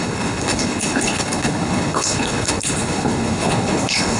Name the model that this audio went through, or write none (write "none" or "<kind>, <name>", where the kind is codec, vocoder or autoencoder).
codec, HILCodec